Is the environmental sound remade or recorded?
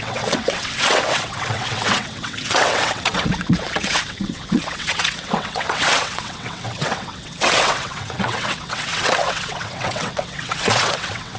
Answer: remade